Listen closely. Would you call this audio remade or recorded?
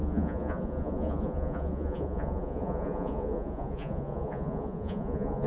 remade